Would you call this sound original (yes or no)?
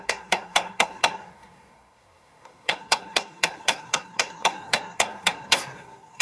no